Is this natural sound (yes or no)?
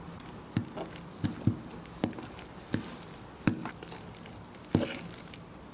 yes